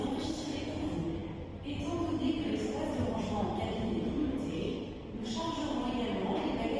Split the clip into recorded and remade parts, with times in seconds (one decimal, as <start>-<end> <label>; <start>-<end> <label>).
0.0-4.5 recorded; 4.5-5.1 remade; 5.1-6.8 recorded